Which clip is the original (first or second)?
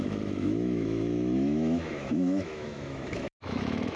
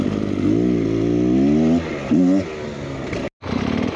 second